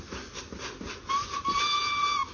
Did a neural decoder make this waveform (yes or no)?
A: no